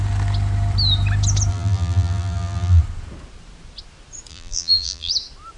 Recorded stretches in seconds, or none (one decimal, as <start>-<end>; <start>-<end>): 0.0-1.5; 2.8-4.3; 5.1-5.6